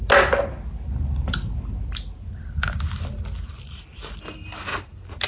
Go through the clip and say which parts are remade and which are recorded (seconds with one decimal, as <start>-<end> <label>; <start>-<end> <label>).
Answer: 0.0-5.3 recorded